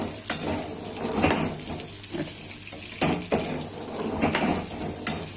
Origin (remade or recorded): recorded